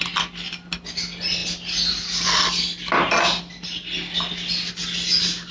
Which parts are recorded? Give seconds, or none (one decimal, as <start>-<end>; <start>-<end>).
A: 0.0-5.5